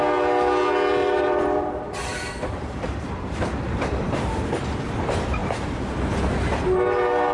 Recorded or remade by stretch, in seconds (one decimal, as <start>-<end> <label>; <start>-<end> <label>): 0.0-1.0 recorded; 1.0-4.9 remade; 4.9-5.4 recorded; 5.4-5.9 remade; 5.9-7.3 recorded